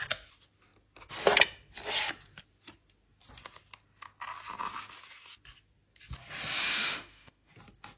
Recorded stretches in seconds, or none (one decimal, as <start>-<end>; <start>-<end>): 0.0-6.6; 7.5-8.0